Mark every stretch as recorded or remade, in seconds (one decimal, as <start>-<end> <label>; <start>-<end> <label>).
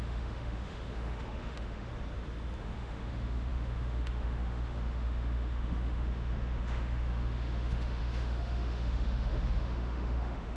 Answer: 0.0-1.9 remade; 1.9-2.6 recorded; 2.6-10.6 remade